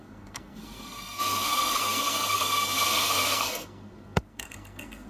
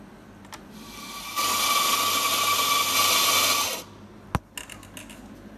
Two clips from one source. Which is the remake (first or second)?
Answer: first